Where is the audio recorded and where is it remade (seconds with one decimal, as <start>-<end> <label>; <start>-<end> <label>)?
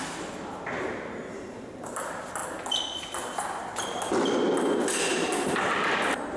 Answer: 0.0-1.2 recorded; 1.2-2.0 remade; 2.0-5.1 recorded; 5.1-6.4 remade